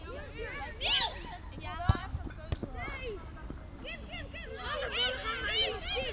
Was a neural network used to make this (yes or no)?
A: no